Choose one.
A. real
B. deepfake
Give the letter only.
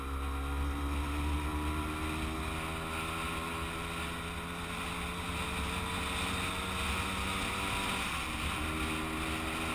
A